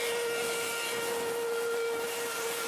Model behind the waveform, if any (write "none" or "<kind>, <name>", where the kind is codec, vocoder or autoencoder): none